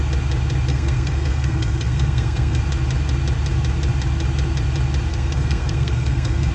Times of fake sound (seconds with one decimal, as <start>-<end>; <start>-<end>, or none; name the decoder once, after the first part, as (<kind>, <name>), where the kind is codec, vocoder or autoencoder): 0.7-2.6 (codec, SNAC); 5.1-6.5